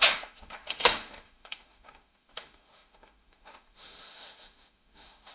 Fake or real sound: fake